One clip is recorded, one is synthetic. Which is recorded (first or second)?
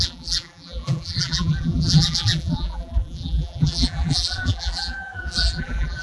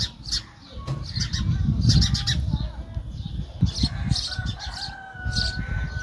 second